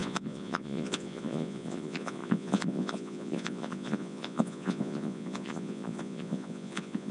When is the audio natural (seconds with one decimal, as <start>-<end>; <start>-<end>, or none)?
none